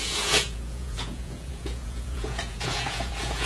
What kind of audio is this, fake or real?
fake